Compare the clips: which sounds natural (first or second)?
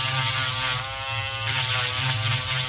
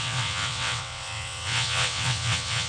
first